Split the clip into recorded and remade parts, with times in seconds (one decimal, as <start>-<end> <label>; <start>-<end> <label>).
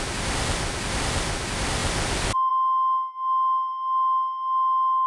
0.0-5.1 recorded